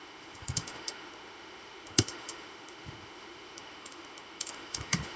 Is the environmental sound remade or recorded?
remade